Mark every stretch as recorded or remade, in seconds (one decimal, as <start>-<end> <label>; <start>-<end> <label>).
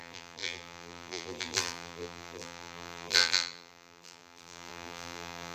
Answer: 0.0-5.5 remade